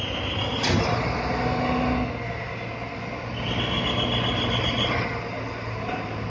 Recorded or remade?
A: recorded